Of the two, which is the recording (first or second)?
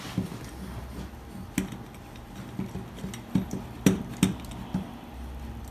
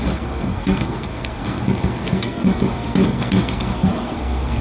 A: first